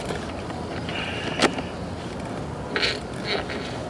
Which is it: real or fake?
real